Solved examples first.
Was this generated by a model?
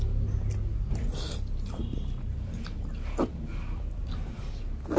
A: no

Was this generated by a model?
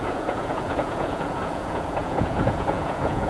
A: yes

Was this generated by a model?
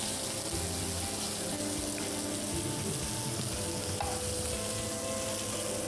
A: no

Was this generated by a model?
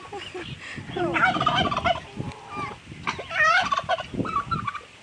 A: no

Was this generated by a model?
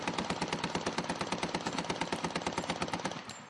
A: yes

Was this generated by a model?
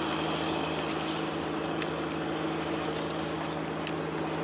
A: no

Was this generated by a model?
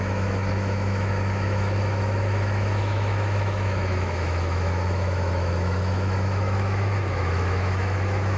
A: yes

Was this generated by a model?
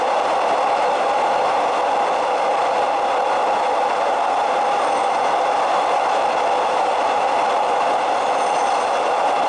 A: no